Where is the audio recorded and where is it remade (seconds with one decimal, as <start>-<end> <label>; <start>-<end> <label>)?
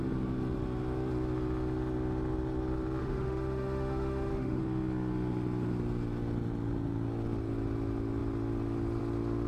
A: 0.0-3.0 recorded; 3.0-4.6 remade; 4.6-9.5 recorded